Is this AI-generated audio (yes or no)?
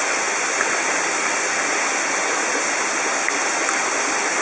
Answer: no